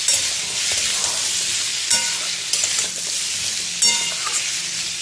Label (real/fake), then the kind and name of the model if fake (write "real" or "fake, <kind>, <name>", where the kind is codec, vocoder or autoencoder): real